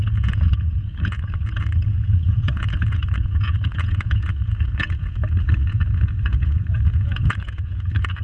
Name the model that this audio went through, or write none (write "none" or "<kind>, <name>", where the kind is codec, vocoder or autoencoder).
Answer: vocoder, Vocos